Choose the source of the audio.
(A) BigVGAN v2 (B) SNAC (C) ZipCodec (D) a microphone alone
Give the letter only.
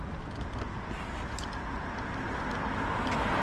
D